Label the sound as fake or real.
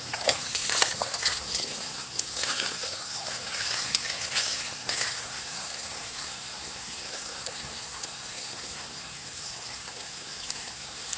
fake